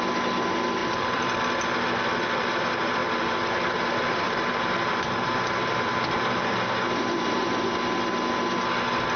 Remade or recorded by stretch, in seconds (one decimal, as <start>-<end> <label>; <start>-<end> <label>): 0.0-0.8 recorded; 0.8-1.4 remade; 1.4-3.0 recorded; 3.0-7.7 remade; 7.7-9.2 recorded

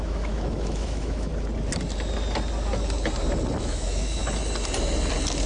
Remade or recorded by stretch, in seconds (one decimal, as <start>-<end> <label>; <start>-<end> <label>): 0.0-1.3 remade; 1.3-3.6 recorded; 3.6-4.2 remade; 4.2-5.5 recorded

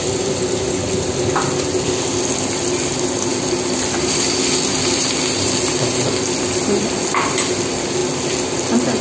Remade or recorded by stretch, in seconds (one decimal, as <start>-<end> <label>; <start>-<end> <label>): 0.0-9.0 recorded

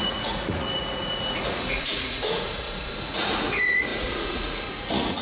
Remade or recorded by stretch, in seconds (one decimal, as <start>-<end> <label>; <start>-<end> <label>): 0.0-5.2 remade

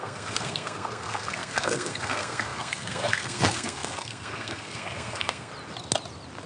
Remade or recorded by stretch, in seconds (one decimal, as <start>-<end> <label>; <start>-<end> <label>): 0.0-5.5 remade; 5.5-6.5 recorded

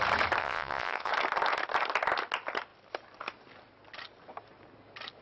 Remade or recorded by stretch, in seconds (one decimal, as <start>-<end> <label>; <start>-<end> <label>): 0.0-0.4 recorded; 0.4-1.1 remade; 1.1-5.2 recorded